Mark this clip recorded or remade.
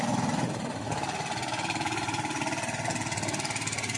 recorded